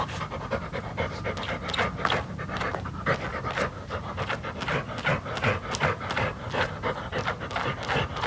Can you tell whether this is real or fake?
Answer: real